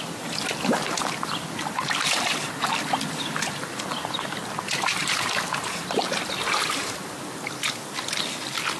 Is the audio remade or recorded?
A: recorded